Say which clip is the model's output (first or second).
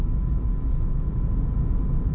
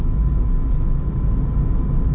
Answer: first